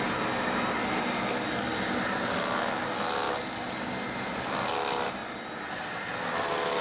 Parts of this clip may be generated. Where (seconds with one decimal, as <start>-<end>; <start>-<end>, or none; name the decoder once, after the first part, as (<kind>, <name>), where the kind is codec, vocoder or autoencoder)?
none